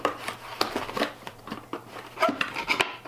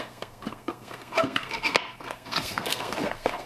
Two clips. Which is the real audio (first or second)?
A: first